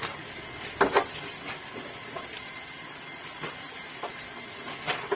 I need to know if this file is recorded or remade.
recorded